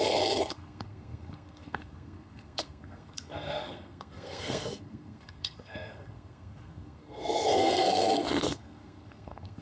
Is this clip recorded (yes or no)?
no